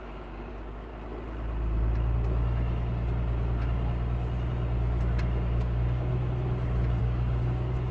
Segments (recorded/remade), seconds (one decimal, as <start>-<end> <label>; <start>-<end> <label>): 0.0-0.9 remade; 0.9-5.6 recorded; 5.6-6.1 remade; 6.1-7.0 recorded; 7.0-7.9 remade